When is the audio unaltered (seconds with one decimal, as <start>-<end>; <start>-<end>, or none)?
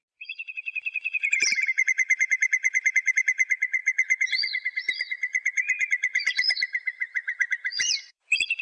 none